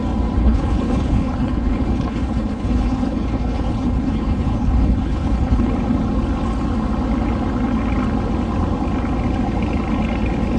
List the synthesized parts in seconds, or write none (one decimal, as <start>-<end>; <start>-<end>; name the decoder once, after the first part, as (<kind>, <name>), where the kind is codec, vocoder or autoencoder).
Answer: 0.4-5.7 (codec, HILCodec)

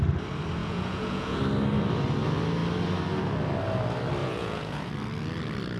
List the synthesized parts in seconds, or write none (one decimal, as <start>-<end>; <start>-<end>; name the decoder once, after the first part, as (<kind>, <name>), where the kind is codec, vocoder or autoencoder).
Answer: 0.6-1.4 (vocoder, Vocos); 4.2-4.9

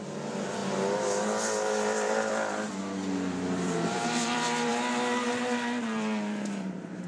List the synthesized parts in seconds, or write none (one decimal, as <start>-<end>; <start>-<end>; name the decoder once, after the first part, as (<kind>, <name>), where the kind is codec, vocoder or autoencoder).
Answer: 0.0-0.6 (vocoder, BigVGAN v2); 2.3-4.7; 5.3-7.1

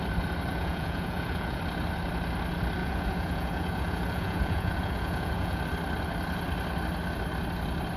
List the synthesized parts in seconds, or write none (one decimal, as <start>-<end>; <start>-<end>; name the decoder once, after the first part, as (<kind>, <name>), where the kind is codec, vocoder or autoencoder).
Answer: 0.5-1.6 (vocoder, Vocos); 2.8-5.6

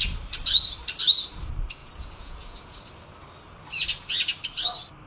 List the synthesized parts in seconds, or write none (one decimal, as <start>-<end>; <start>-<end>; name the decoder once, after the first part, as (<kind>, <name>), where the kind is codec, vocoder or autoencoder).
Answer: 1.8-2.8 (vocoder, Vocos)

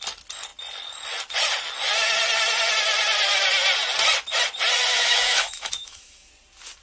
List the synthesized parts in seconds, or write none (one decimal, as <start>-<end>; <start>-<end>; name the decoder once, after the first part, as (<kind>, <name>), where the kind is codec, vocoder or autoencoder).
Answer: 4.9-6.3 (autoencoder, DAC-VAE)

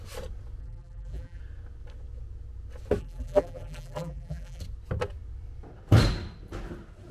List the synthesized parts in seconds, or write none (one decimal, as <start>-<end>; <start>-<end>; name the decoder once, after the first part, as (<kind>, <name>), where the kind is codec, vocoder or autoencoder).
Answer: 0.6-1.4 (vocoder, BigVGAN v2); 3.0-4.6

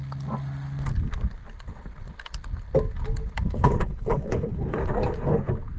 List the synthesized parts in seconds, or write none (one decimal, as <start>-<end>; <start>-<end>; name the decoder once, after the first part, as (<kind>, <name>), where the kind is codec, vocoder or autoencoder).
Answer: 3.5-4.8 (codec, HILCodec)